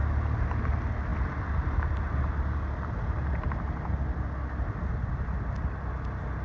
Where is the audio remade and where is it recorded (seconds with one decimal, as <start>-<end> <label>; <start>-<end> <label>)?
0.0-6.4 recorded